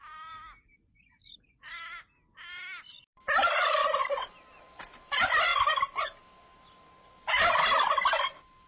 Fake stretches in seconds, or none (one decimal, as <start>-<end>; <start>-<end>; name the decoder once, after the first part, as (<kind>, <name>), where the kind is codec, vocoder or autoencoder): 0.0-3.8 (vocoder, BigVGAN v2); 4.6-5.5